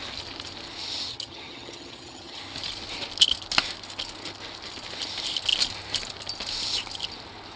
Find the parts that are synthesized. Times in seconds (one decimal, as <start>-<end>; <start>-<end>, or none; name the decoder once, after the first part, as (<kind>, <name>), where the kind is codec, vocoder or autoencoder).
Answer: 1.1-2.4 (vocoder, HiFi-GAN)